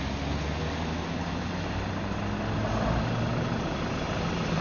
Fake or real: real